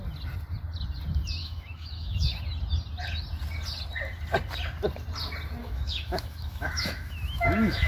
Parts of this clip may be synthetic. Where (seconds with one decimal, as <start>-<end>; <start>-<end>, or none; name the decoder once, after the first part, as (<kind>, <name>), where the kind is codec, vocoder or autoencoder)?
1.4-2.4 (autoencoder, DAC-VAE); 5.6-7.9